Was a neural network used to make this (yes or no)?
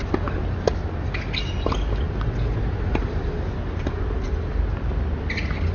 no